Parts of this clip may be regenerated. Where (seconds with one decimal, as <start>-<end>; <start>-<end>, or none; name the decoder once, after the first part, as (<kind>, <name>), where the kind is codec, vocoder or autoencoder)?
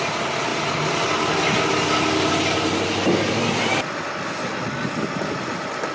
none